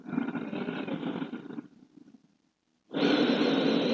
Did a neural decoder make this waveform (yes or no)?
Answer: no